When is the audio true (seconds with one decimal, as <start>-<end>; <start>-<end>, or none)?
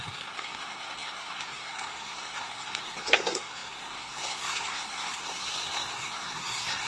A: none